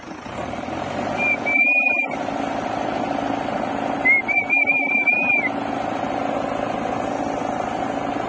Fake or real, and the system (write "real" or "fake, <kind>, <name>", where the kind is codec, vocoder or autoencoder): real